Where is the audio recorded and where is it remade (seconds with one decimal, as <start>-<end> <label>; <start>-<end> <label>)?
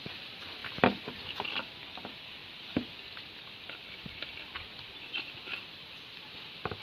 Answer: 0.0-6.8 recorded